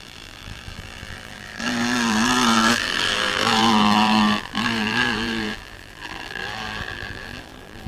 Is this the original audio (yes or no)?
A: no